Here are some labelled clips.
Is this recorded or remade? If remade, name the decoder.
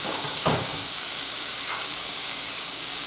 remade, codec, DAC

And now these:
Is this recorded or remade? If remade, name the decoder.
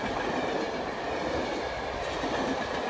recorded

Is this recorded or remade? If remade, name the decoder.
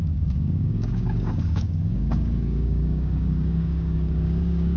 remade, codec, DAC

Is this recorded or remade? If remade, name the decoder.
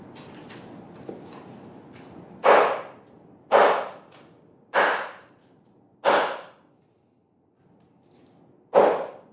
recorded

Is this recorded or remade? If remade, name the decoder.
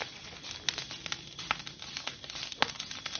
recorded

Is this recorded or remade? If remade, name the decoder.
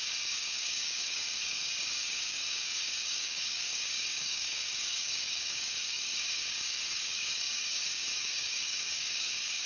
remade, codec, DAC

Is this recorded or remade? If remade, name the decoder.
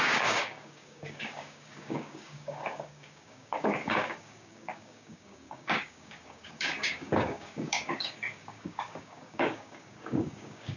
remade, codec, DAC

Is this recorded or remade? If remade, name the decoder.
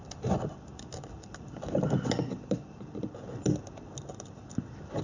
recorded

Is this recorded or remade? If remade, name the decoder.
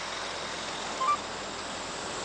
recorded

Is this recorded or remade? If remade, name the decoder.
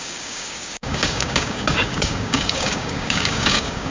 remade, codec, DAC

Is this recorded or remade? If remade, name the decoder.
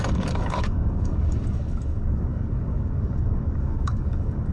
remade, codec, DAC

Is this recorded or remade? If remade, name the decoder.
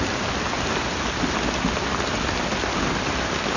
recorded